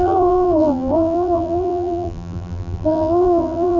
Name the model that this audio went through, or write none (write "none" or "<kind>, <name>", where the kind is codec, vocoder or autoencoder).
vocoder, BigVGAN v2